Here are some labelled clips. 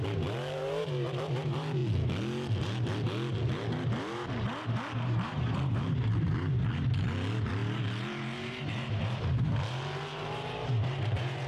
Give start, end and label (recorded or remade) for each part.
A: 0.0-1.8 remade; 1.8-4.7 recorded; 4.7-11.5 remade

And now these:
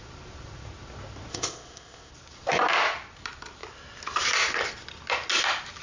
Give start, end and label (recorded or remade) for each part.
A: 0.0-1.3 recorded; 1.3-2.1 remade; 2.1-5.8 recorded

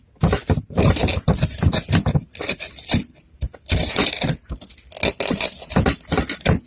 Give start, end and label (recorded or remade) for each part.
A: 0.0-6.7 recorded

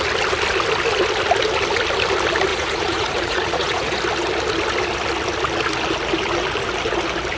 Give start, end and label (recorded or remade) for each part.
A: 0.0-2.5 recorded; 2.5-4.0 remade; 4.0-7.4 recorded

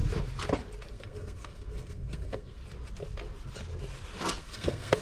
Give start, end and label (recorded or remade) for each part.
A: 0.0-0.9 recorded; 0.9-2.6 remade; 2.6-4.4 recorded; 4.4-5.0 remade

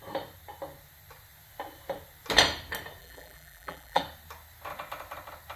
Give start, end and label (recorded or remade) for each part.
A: 0.0-3.0 recorded; 3.0-4.0 remade; 4.0-5.6 recorded

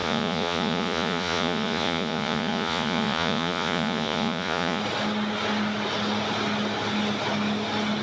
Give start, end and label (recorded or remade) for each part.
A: 0.0-4.8 remade; 4.8-8.0 recorded